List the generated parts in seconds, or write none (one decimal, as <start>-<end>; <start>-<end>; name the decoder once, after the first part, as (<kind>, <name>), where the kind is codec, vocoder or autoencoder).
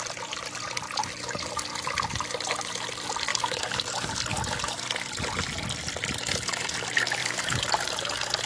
3.3-4.2 (codec, DAC); 7.2-7.7